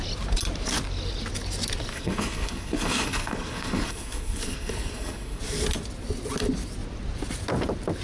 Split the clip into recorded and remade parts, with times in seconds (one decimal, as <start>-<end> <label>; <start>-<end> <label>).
0.0-1.9 recorded; 1.9-5.4 remade; 5.4-8.0 recorded